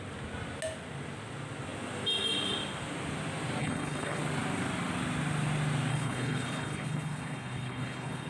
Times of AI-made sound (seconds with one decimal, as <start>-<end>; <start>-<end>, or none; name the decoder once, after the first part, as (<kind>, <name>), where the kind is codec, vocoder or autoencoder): 3.6-4.2 (codec, HILCodec); 5.9-8.3